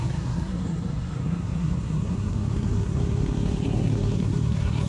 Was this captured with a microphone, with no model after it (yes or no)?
no